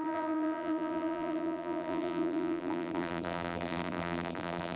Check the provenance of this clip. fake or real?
fake